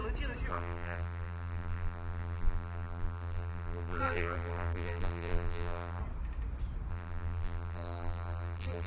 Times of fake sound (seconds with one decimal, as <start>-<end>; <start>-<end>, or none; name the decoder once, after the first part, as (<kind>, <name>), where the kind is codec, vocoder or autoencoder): 0.5-6.0 (vocoder, BigVGAN v2); 6.9-8.9